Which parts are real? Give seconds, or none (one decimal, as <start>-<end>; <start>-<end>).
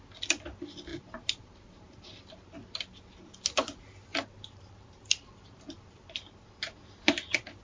0.0-0.9; 2.2-4.1; 6.9-7.6